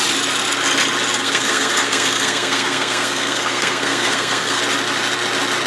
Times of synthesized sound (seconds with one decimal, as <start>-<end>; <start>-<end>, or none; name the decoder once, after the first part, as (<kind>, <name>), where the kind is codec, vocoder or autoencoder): 1.2-4.6 (codec, SNAC)